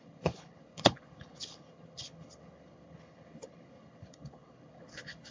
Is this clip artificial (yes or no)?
yes